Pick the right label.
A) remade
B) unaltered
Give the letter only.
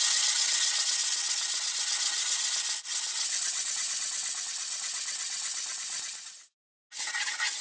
B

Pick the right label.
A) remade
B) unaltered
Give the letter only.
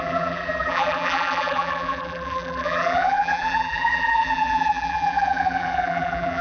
A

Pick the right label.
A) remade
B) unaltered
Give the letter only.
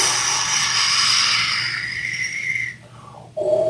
B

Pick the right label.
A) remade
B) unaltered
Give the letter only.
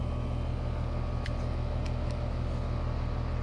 B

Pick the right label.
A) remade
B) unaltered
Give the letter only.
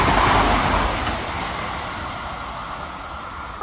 B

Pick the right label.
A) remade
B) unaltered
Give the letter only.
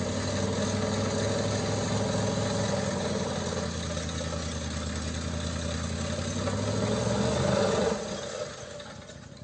B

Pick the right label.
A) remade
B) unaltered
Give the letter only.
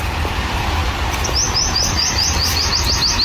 B